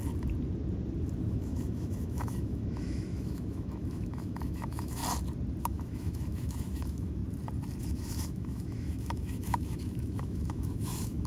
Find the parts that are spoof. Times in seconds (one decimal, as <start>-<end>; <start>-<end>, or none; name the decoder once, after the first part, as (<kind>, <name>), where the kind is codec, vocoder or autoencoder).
1.3-5.0 (autoencoder, DAC-VAE); 5.6-7.2; 7.8-11.3